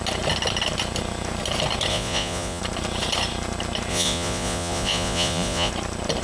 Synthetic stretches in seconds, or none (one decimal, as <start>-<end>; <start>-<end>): 1.9-2.6; 3.9-5.7